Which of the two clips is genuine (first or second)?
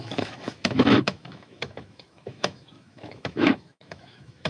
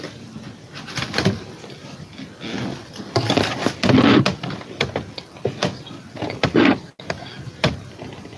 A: second